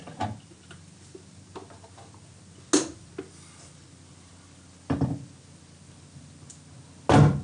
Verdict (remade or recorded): recorded